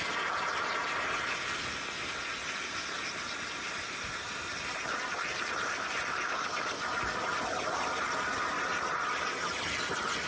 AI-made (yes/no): no